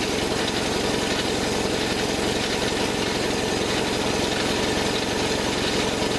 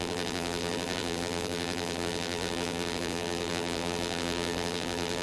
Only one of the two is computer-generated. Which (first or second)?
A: second